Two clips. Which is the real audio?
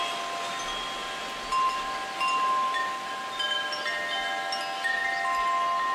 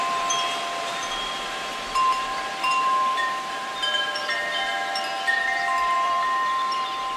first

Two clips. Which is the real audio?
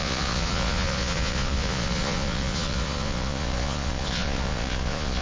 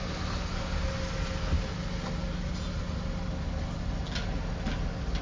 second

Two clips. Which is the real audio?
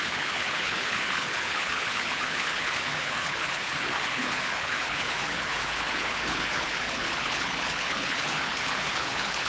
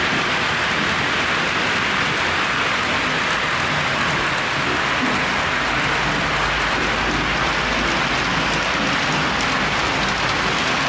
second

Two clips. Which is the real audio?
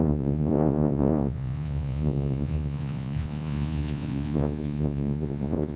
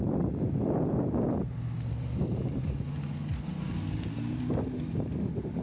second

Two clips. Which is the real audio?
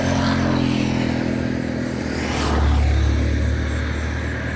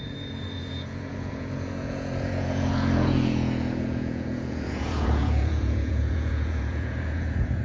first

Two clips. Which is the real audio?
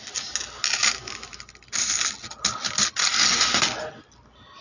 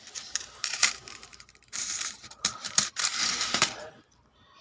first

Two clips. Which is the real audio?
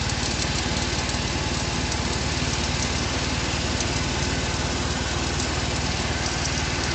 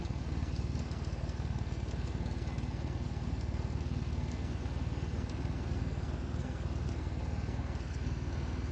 first